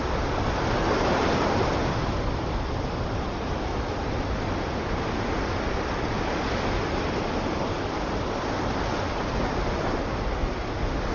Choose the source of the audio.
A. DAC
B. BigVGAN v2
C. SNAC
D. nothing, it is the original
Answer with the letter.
D